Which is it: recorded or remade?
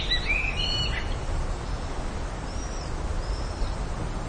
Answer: recorded